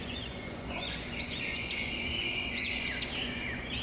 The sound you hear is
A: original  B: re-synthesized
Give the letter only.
B